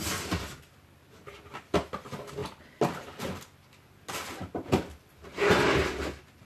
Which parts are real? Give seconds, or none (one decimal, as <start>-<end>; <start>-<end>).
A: 0.0-6.4